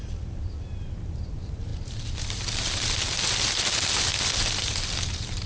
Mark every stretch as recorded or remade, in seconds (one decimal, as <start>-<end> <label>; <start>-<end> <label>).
0.0-5.5 recorded